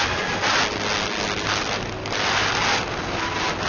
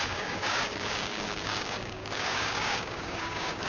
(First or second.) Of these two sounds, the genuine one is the first